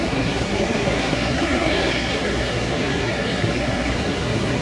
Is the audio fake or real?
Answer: fake